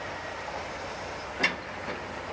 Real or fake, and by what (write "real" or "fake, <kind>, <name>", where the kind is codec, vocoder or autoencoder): real